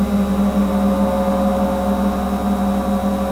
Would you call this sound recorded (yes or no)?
yes